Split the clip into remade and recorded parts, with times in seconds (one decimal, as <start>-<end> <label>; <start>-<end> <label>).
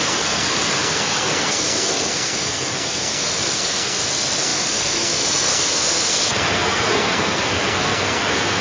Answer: 0.0-8.6 remade